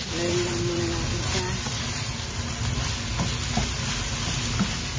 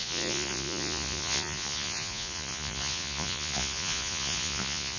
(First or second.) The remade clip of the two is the second